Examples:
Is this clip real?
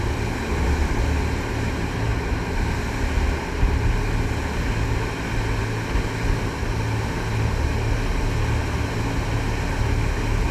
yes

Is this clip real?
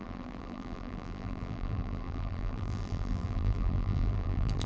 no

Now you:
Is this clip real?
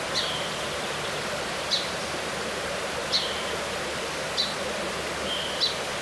yes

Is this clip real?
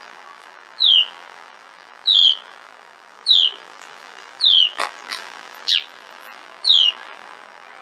no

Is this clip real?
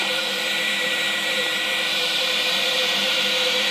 no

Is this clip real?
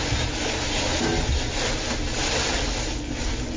yes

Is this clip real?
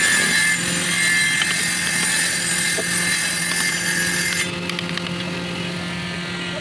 yes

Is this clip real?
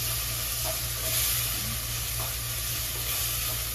yes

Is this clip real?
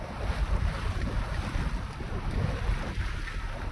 yes